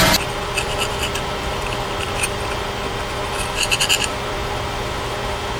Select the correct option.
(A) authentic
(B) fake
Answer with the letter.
B